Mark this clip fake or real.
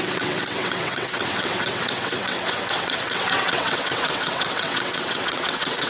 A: fake